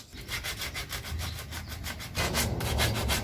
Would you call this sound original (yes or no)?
yes